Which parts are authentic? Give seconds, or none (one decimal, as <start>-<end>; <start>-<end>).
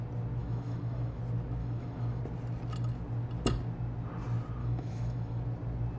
0.0-0.4; 1.2-1.6; 2.2-4.6; 5.4-6.0